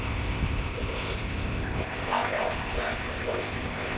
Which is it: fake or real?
fake